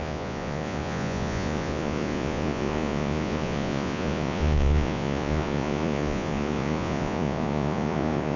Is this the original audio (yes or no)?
no